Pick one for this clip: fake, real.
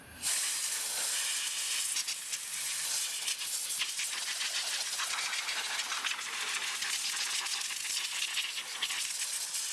real